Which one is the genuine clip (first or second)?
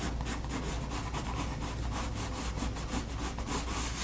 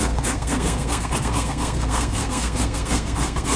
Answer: first